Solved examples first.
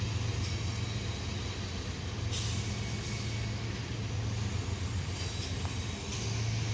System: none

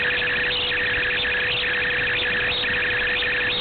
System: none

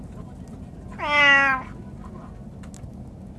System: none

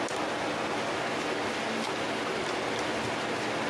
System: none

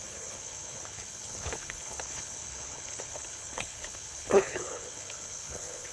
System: codec, HILCodec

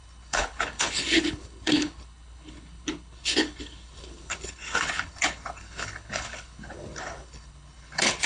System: codec, HILCodec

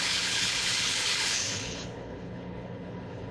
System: codec, HILCodec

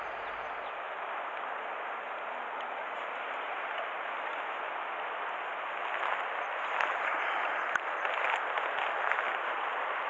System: none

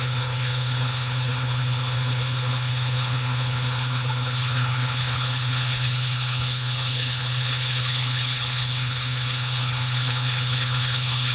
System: codec, HILCodec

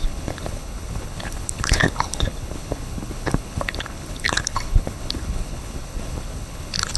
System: codec, HILCodec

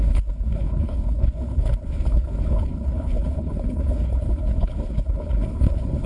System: codec, HILCodec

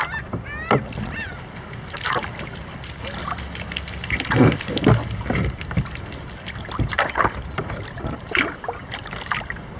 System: none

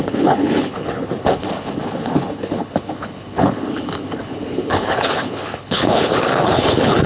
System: codec, HILCodec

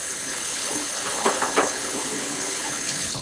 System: codec, HILCodec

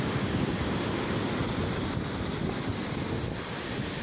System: none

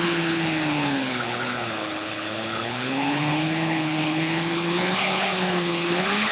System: codec, HILCodec